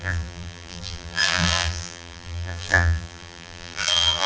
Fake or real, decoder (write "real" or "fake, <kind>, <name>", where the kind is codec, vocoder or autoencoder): fake, vocoder, BigVGAN v2